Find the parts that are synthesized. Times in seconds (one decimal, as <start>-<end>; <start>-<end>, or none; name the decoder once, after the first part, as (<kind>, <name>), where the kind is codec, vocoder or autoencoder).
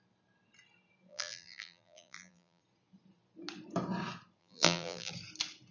1.1-2.6 (vocoder, BigVGAN v2); 4.4-5.1